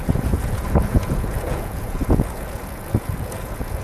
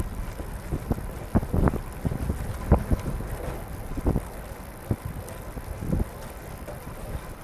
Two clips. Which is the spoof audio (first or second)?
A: first